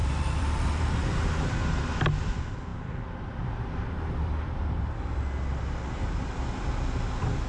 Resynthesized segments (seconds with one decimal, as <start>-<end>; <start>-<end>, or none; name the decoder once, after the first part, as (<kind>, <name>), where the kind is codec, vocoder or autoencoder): 0.0-0.8 (vocoder, BigVGAN v2); 2.7-3.7

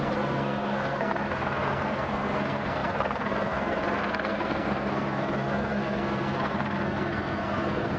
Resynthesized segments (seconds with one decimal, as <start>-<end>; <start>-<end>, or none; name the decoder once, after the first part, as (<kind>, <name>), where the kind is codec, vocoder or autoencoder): 0.0-8.0 (codec, SNAC)

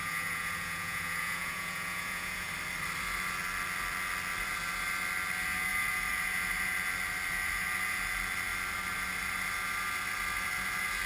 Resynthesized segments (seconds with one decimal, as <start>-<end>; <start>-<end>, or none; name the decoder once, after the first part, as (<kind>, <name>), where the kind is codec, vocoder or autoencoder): 0.0-2.5 (vocoder, Vocos)

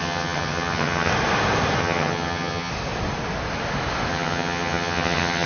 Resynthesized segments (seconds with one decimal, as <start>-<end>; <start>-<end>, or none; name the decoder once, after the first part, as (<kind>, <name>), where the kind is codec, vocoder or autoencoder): 0.0-1.1 (vocoder, HiFi-GAN); 1.8-2.7; 4.1-5.5

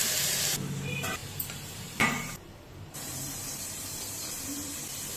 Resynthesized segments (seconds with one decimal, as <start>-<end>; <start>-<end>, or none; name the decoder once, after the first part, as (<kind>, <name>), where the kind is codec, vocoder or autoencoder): 1.2-4.3 (vocoder, BigVGAN v2)

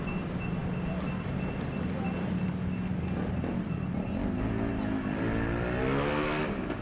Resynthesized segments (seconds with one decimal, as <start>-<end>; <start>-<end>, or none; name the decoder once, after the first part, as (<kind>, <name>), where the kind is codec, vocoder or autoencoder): none